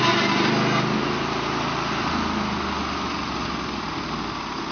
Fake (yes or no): no